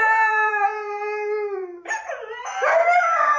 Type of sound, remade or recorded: remade